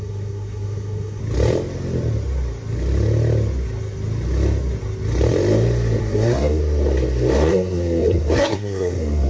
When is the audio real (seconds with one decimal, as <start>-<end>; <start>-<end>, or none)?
1.2-6.0; 6.6-7.5